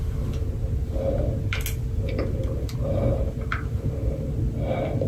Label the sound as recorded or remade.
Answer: recorded